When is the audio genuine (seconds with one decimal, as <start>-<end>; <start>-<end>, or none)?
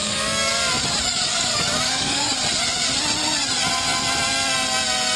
0.5-1.0; 2.3-5.2